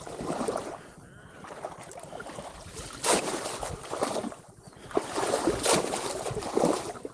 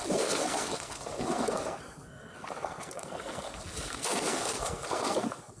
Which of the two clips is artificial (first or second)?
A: second